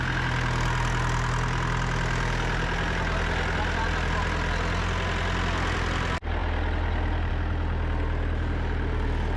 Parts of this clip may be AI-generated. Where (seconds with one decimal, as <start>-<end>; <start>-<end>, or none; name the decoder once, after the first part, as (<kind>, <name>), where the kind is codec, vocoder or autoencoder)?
none